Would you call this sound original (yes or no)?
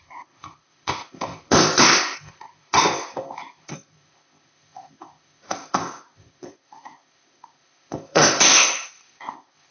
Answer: no